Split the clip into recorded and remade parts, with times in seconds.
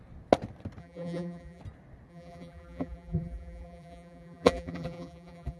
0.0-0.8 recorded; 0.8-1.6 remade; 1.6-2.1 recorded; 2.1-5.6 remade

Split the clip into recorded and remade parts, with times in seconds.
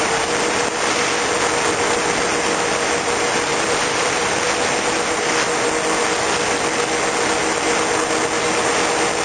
0.0-3.5 recorded; 3.5-4.3 remade; 4.3-9.2 recorded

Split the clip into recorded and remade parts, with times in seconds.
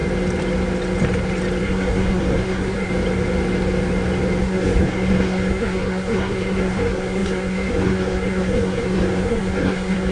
0.0-1.6 recorded; 1.6-2.9 remade; 2.9-4.4 recorded; 4.4-10.1 remade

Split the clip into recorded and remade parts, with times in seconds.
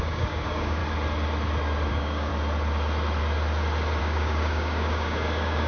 0.0-0.8 remade; 0.8-1.9 recorded; 1.9-2.3 remade; 2.3-4.0 recorded; 4.0-5.7 remade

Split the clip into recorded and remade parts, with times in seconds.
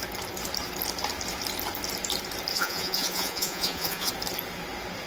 0.0-2.5 recorded; 2.5-4.1 remade; 4.1-5.1 recorded